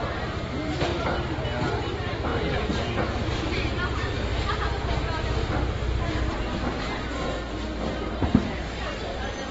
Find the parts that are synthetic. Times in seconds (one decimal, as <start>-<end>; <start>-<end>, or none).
0.0-0.9; 1.7-4.3; 6.3-9.5